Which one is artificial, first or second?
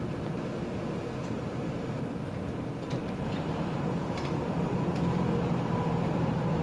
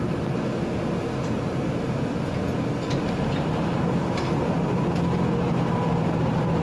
first